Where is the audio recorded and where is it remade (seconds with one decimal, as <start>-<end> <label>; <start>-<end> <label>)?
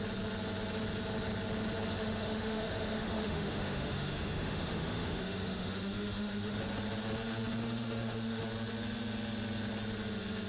0.0-1.9 recorded; 1.9-6.6 remade; 6.6-7.6 recorded; 7.6-8.4 remade; 8.4-10.5 recorded